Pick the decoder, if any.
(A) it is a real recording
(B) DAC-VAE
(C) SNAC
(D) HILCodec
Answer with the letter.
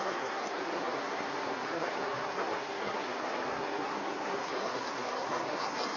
C